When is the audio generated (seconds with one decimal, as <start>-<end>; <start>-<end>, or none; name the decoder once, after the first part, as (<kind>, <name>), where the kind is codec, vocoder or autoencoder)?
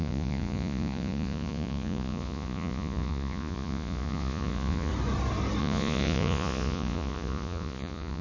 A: 0.0-4.9 (vocoder, Vocos); 5.6-8.2